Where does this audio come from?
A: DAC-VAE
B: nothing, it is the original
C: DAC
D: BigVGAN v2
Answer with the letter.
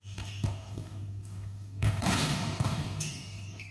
C